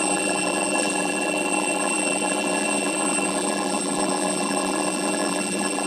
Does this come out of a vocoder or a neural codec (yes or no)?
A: yes